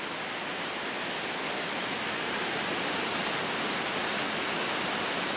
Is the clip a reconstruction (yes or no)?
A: no